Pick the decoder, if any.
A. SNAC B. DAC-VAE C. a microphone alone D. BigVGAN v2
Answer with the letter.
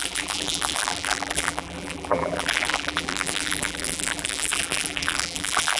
D